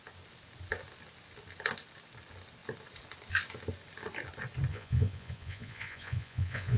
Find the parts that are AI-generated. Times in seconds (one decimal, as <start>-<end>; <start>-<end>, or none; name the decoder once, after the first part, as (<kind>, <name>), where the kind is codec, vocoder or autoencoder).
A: 4.7-6.8 (vocoder, Vocos)